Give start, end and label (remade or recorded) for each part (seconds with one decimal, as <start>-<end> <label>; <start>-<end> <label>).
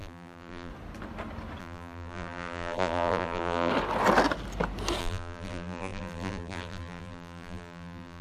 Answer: 0.0-0.7 remade; 0.7-1.6 recorded; 1.6-3.7 remade; 3.7-5.0 recorded; 5.0-8.2 remade